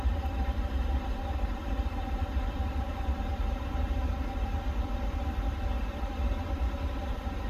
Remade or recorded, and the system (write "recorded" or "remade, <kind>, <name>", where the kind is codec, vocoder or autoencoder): remade, vocoder, BigVGAN v2